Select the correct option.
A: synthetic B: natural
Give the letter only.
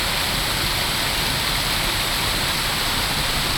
B